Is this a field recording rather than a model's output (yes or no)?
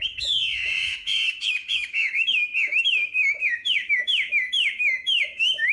no